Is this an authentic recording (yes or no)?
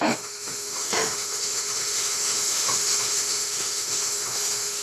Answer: no